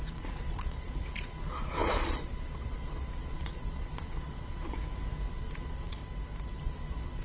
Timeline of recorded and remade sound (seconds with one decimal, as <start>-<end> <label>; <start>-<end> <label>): 0.0-4.7 remade; 4.7-5.3 recorded; 5.3-6.0 remade; 6.0-6.6 recorded; 6.6-7.2 remade